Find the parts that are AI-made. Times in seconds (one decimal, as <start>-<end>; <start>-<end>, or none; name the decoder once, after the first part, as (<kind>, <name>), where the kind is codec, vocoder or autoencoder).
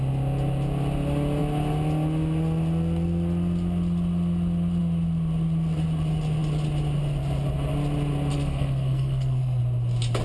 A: 8.3-9.6 (codec, SNAC)